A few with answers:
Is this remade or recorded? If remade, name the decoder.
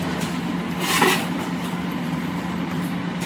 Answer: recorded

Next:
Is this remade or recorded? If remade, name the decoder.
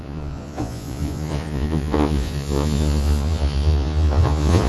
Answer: remade, vocoder, Vocos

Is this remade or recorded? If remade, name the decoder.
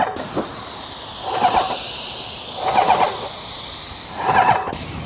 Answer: recorded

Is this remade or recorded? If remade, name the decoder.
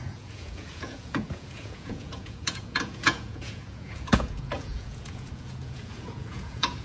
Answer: remade, vocoder, Vocos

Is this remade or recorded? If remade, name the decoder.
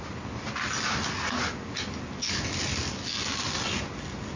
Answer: recorded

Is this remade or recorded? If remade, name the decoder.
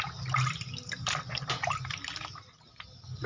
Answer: recorded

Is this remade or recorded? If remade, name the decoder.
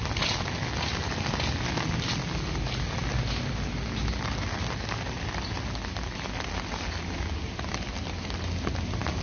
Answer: recorded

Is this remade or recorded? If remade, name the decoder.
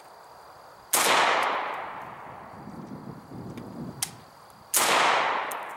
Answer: recorded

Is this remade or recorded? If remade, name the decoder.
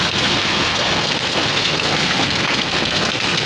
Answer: remade, codec, SNAC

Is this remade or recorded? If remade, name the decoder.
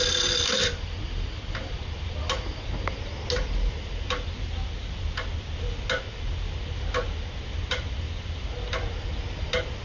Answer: recorded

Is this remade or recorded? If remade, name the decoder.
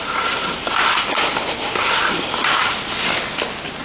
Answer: recorded